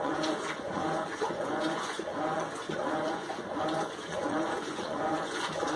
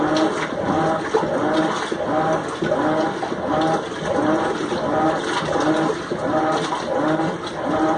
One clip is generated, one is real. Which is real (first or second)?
second